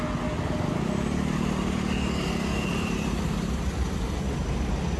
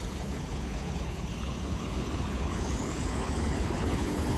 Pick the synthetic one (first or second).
second